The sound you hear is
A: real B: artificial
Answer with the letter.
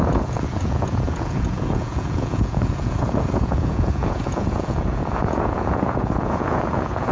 B